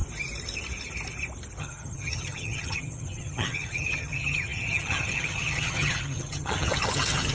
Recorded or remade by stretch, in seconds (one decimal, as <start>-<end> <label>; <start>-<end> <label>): 0.0-1.6 recorded; 1.6-7.3 remade